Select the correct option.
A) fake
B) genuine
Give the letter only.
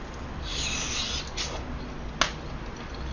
B